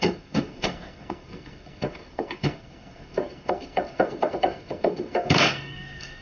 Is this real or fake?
fake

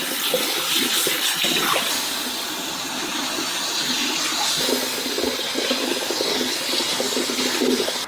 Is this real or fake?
real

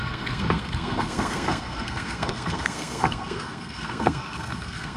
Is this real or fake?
fake